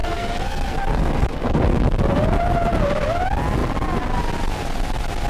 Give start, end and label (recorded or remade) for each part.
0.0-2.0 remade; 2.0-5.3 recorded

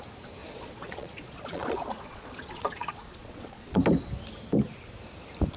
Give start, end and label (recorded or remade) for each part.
0.0-0.4 recorded; 0.4-3.8 remade; 3.8-5.6 recorded

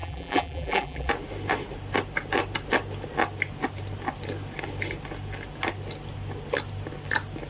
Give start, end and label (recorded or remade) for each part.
0.0-1.1 remade; 1.1-7.5 recorded

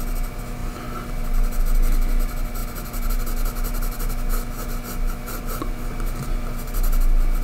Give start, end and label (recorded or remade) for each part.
0.0-7.4 recorded

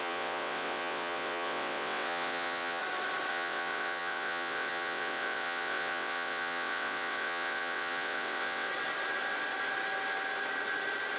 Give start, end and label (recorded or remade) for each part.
0.0-2.8 remade; 2.8-3.3 recorded; 3.3-8.7 remade; 8.7-11.2 recorded